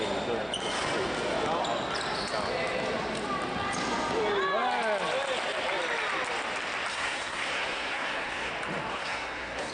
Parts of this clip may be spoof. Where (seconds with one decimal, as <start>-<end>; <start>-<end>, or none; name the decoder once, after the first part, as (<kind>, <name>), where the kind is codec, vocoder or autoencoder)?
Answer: 6.9-8.5 (codec, SNAC); 8.9-9.7